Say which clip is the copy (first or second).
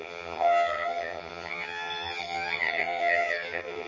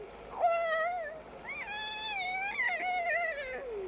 first